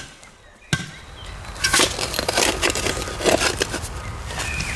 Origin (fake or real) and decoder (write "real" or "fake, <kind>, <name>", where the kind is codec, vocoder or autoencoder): real